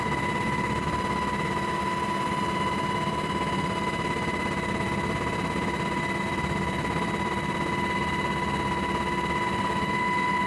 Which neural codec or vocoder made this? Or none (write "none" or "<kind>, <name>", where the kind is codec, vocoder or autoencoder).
none